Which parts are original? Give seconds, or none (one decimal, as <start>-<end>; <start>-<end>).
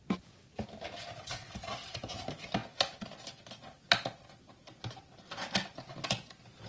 0.0-6.7